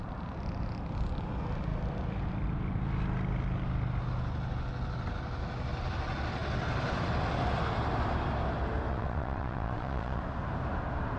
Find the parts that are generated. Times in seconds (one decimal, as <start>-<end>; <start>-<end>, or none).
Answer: 8.9-10.2